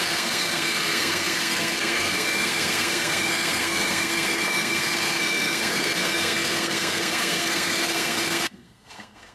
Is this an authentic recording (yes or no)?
no